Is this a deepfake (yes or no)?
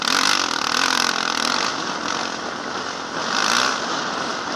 no